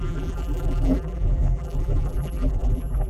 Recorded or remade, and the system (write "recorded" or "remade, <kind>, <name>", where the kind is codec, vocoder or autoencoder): remade, vocoder, BigVGAN v2